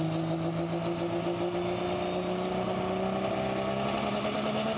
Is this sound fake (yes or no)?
no